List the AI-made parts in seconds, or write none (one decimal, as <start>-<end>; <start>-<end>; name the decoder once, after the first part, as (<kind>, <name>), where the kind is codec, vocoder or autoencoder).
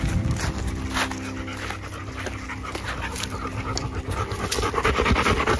none